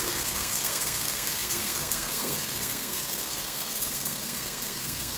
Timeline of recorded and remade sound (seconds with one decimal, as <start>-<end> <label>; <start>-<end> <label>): 0.0-5.2 remade